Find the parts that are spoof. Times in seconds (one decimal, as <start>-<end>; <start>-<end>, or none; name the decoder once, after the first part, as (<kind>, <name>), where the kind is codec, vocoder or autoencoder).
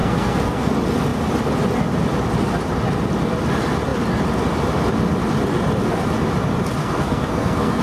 0.0-0.7 (codec, SNAC); 6.8-7.8